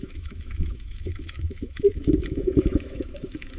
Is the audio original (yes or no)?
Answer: no